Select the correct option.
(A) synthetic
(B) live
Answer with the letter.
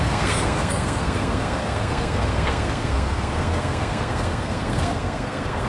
A